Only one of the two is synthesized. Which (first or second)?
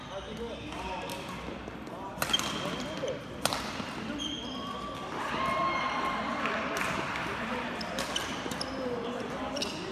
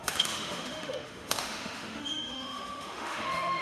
second